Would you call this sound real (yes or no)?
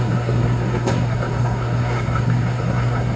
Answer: no